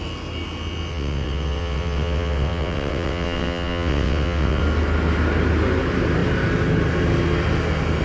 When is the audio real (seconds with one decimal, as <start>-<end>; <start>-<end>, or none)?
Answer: 0.0-0.9; 4.6-8.0